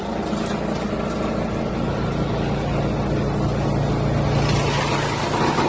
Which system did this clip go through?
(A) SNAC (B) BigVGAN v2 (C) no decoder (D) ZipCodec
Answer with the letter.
C